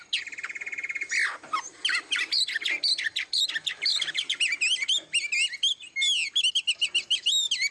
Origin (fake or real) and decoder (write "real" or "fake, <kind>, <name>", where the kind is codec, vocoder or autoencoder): real